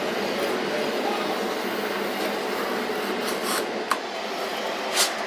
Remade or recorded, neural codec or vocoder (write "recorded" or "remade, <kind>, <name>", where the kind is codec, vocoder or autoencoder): recorded